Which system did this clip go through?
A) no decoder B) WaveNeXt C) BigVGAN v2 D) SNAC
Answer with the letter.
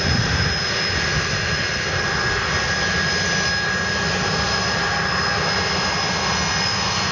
A